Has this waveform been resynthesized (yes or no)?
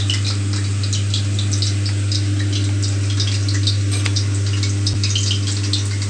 no